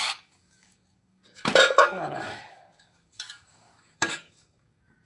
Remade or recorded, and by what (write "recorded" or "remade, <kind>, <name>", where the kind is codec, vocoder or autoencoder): remade, codec, DAC